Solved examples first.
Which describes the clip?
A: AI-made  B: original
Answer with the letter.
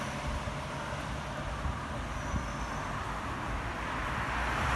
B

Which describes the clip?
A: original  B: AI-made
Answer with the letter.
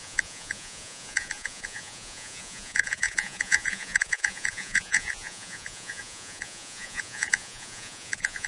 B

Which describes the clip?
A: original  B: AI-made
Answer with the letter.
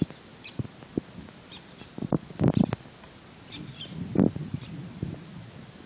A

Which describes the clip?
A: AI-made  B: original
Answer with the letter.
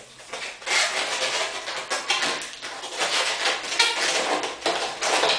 B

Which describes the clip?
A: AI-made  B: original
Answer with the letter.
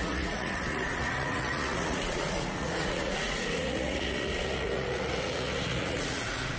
A